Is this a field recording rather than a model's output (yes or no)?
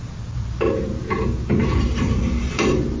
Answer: yes